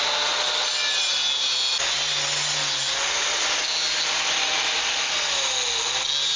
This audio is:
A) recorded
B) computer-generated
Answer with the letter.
A